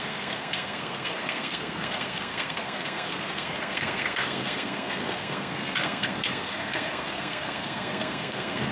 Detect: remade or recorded remade